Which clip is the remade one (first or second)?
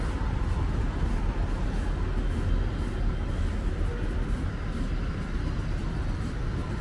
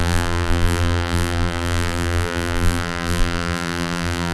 second